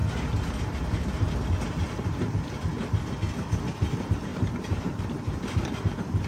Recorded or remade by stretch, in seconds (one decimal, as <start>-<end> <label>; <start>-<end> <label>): 0.0-4.3 recorded; 4.3-5.0 remade; 5.0-6.3 recorded